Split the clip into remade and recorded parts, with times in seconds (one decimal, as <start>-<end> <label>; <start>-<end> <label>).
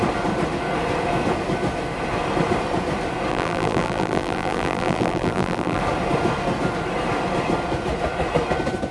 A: 0.0-3.3 recorded; 3.3-5.8 remade; 5.8-8.9 recorded